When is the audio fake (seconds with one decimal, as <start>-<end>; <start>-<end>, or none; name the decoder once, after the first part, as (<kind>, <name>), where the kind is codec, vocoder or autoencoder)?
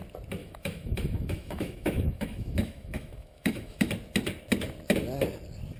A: 0.4-3.9 (autoencoder, DAC-VAE)